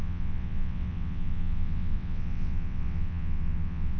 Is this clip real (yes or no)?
no